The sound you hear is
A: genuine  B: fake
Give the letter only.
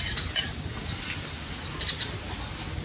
A